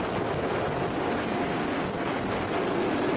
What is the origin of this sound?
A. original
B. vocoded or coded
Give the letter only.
A